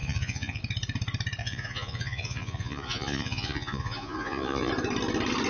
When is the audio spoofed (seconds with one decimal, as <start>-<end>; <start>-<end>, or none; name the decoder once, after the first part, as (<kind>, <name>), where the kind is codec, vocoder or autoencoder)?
0.0-0.6 (vocoder, Vocos); 1.4-4.7